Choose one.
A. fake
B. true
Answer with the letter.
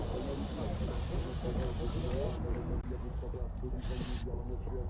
B